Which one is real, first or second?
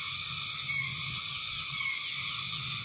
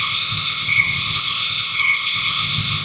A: first